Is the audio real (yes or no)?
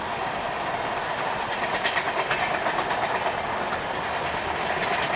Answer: no